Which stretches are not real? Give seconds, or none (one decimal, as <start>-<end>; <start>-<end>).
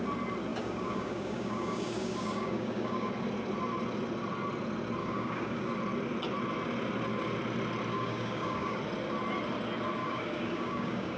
0.5-3.1; 5.0-5.7; 7.9-8.8; 10.0-11.2